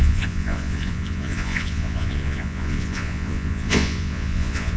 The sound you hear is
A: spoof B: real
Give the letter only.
A